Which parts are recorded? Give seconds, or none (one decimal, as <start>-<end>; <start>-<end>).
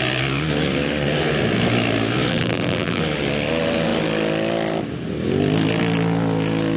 0.0-2.3; 3.0-6.8